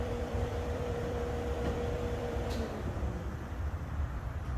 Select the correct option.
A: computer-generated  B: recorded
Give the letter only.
A